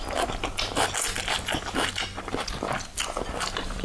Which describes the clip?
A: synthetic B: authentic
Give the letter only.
B